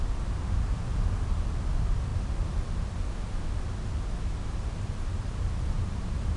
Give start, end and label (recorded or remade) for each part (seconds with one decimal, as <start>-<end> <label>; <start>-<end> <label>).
0.0-6.4 recorded